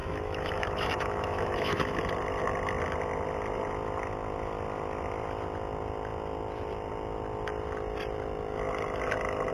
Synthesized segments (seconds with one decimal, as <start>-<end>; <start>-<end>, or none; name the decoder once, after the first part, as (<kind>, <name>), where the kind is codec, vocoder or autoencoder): 0.0-2.0 (autoencoder, DAC-VAE)